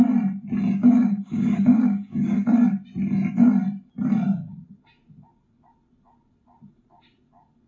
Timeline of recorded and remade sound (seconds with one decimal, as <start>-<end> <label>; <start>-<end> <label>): 0.0-0.8 recorded; 0.8-2.5 remade; 2.5-7.7 recorded